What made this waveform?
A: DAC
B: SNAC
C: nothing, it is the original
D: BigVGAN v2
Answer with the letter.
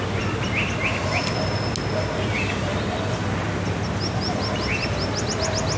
C